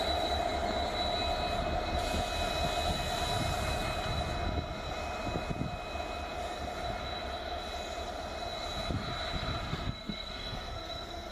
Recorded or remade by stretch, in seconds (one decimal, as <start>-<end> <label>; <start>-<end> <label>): 0.0-9.7 recorded; 9.7-11.3 remade